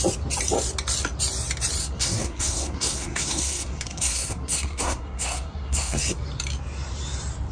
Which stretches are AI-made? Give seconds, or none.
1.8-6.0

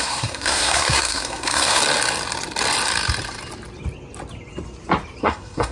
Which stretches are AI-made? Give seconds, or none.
0.0-1.8; 5.2-5.7

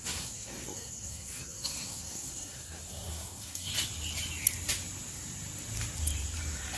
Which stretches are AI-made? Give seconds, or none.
0.0-3.7

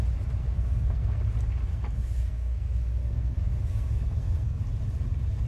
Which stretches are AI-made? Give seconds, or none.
0.4-1.2; 1.7-4.6

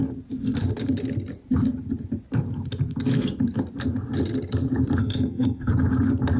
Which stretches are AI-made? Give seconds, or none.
5.0-5.7

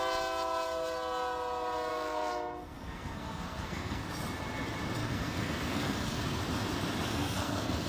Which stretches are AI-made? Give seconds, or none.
1.9-4.1; 5.0-6.4; 7.1-7.9

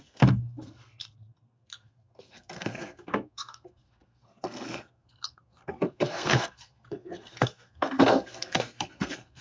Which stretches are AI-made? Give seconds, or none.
0.0-9.4

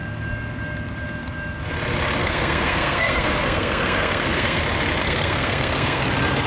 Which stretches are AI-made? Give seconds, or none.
2.2-4.6; 5.0-6.0